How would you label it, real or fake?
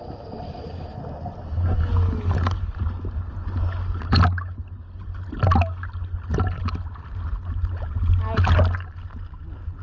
real